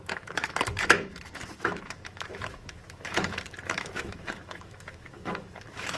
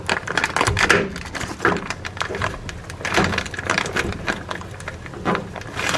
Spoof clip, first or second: first